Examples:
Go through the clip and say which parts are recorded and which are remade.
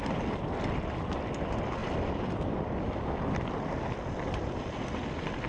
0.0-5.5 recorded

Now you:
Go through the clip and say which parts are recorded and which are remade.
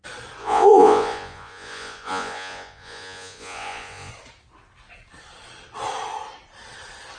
0.0-0.4 recorded; 0.4-4.1 remade; 4.1-7.2 recorded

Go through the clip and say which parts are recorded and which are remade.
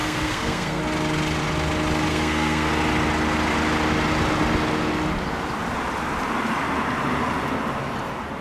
0.0-0.8 remade; 0.8-2.1 recorded; 2.1-2.7 remade; 2.7-8.4 recorded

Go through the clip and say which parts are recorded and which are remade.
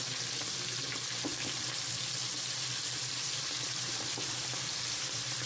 0.0-1.3 recorded; 1.3-2.0 remade; 2.0-3.0 recorded; 3.0-5.5 remade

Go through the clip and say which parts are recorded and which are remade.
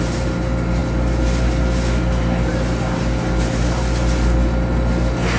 0.0-5.4 recorded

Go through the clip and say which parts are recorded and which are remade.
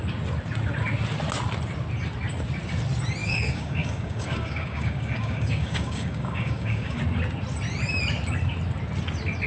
0.0-3.2 recorded; 3.2-7.0 remade; 7.0-9.5 recorded